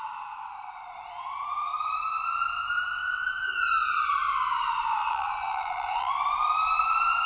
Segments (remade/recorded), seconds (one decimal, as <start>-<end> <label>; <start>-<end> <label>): 0.0-5.0 recorded; 5.0-6.1 remade; 6.1-7.3 recorded